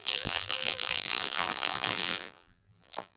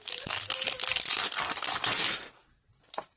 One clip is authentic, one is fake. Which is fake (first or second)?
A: first